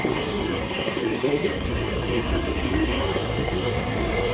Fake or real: fake